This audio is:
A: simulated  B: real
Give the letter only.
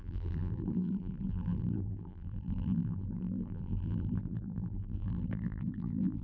A